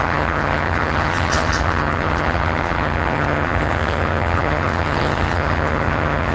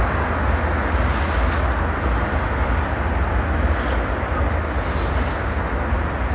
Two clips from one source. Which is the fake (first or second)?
first